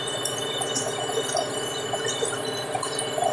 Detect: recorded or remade recorded